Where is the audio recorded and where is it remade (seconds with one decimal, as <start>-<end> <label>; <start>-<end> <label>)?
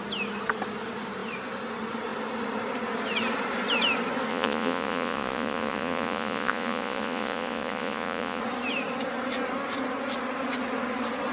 0.0-4.3 recorded; 4.3-8.4 remade; 8.4-11.3 recorded